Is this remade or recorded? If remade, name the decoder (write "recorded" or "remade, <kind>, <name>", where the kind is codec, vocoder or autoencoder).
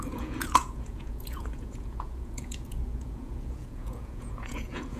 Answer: remade, vocoder, Vocos